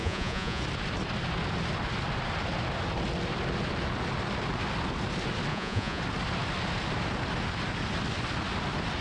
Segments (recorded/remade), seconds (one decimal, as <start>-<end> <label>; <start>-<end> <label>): 0.0-0.6 remade; 0.6-5.5 recorded; 5.5-6.0 remade; 6.0-9.0 recorded